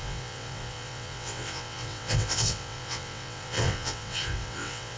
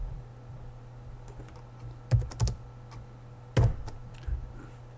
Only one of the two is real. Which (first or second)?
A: second